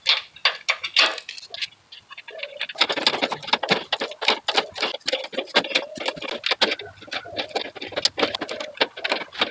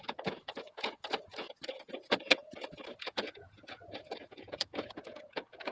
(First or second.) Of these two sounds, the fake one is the second